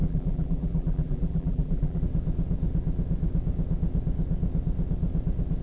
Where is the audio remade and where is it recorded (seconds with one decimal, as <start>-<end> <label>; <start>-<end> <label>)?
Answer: 0.0-2.0 remade; 2.0-5.6 recorded

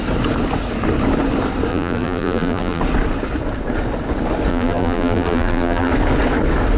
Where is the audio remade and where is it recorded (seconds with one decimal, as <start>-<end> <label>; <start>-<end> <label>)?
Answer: 0.0-1.7 recorded; 1.7-2.8 remade; 2.8-4.5 recorded; 4.5-5.9 remade; 5.9-6.8 recorded

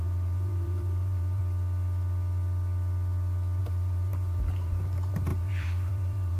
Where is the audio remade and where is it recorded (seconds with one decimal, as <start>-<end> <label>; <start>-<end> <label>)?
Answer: 0.0-1.4 remade; 1.4-3.6 recorded; 3.6-6.4 remade

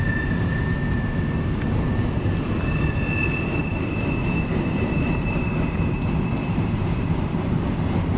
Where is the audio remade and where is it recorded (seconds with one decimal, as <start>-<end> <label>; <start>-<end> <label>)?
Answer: 0.0-3.7 recorded; 3.7-7.6 remade; 7.6-8.2 recorded

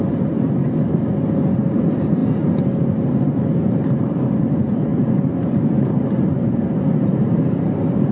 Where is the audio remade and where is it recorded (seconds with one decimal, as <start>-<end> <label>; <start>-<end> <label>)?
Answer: 0.0-0.6 remade; 0.6-1.7 recorded; 1.7-2.2 remade; 2.2-2.9 recorded; 2.9-8.1 remade